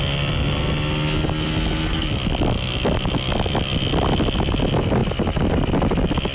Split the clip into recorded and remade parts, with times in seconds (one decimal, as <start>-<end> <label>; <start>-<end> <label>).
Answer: 0.0-6.3 recorded